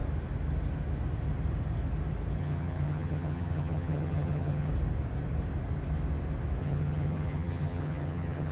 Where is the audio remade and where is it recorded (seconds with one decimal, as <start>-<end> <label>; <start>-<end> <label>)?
0.0-2.4 recorded; 2.4-4.7 remade; 4.7-6.6 recorded; 6.6-8.5 remade